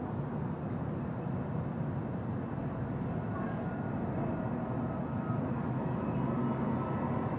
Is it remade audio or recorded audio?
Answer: recorded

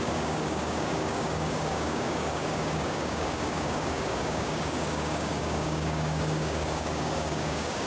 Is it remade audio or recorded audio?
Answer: remade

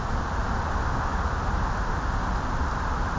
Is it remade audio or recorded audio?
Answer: recorded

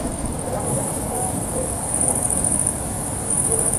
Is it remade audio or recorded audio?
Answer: remade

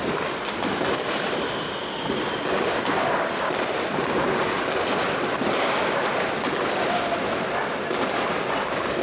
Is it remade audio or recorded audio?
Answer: recorded